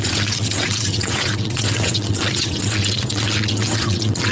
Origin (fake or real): fake